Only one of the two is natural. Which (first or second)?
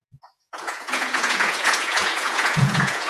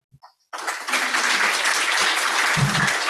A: second